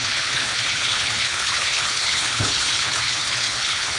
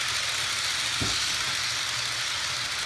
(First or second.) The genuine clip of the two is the second